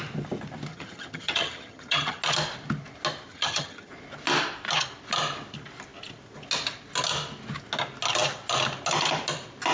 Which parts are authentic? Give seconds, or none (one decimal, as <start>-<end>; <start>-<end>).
0.0-0.7; 2.2-3.3; 3.9-9.7